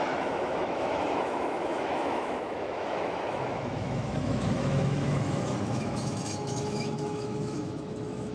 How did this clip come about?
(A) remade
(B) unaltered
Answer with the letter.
A